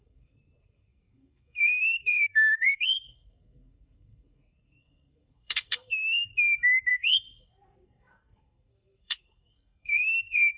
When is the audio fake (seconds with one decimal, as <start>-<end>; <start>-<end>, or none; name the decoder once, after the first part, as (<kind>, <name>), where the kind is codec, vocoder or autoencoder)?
0.0-6.3 (codec, SNAC); 6.9-10.6